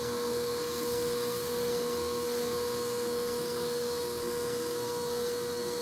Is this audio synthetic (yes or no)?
yes